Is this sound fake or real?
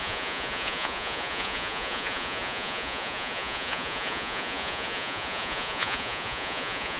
fake